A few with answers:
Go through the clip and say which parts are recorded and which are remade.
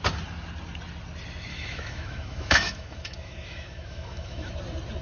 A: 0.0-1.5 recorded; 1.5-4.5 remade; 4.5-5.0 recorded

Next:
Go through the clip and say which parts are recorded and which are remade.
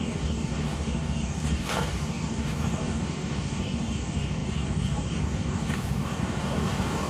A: 0.0-7.1 remade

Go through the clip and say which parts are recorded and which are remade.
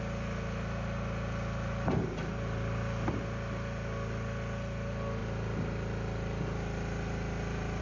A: 0.0-7.8 recorded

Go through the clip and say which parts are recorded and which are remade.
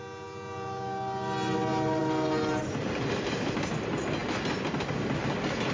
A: 0.0-5.7 recorded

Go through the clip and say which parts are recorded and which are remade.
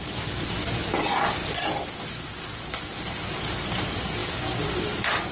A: 0.0-5.3 recorded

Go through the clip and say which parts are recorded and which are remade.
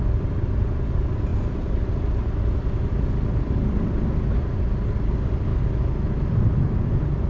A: 0.0-7.3 recorded